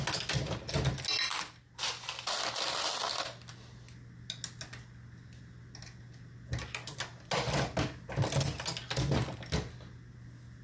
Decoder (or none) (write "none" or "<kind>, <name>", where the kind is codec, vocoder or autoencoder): none